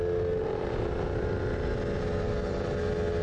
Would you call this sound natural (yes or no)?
yes